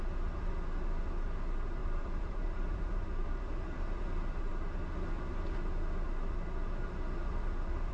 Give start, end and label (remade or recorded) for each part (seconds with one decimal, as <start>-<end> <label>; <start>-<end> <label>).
0.0-1.8 recorded; 1.8-3.5 remade; 3.5-7.9 recorded